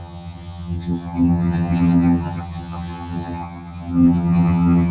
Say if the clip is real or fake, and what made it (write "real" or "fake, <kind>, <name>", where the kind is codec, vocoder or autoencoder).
fake, vocoder, HiFi-GAN